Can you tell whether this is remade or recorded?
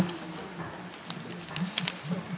recorded